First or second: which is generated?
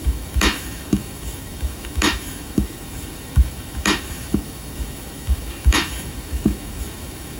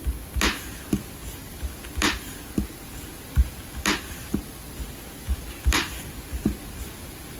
first